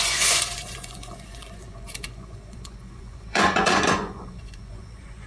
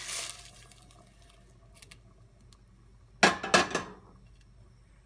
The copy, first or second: first